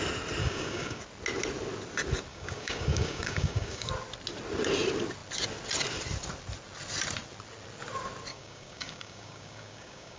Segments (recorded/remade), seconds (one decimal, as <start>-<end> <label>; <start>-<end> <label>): 0.0-0.4 recorded; 0.4-1.0 remade; 1.0-2.3 recorded; 2.3-3.9 remade; 3.9-8.3 recorded; 8.3-10.2 remade